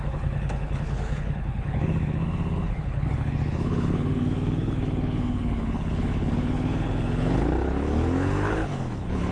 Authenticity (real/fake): fake